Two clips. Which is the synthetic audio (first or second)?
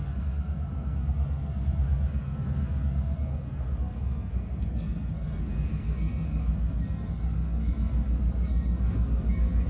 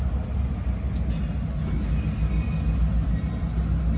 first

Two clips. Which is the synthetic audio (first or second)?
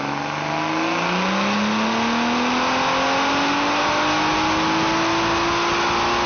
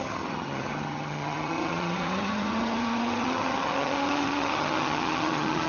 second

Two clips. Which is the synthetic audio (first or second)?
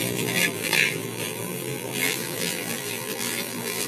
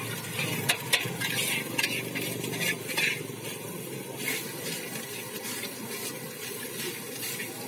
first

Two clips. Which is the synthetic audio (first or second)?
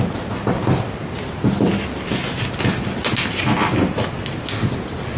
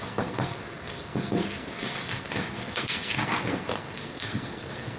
second